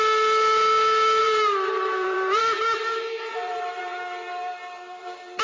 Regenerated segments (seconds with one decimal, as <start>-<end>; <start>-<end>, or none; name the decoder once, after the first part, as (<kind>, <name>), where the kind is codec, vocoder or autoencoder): 1.2-2.4 (vocoder, BigVGAN v2); 3.3-5.4